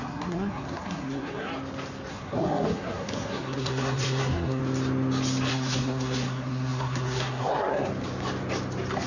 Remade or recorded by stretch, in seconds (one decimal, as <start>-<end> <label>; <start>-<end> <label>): 0.0-1.5 remade; 1.5-2.1 recorded; 2.1-4.6 remade; 4.6-5.5 recorded; 5.5-7.9 remade; 7.9-9.1 recorded